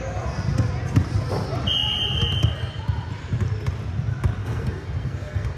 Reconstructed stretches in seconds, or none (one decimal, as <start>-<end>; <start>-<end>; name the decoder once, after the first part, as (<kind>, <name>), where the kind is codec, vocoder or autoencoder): 4.4-5.6 (codec, SNAC)